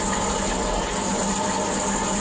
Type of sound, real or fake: real